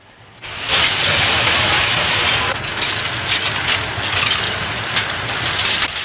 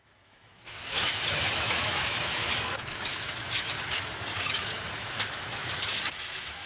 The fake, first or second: second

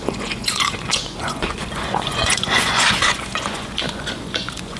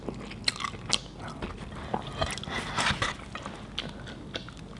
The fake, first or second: first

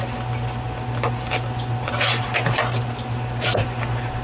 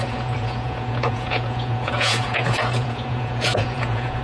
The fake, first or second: second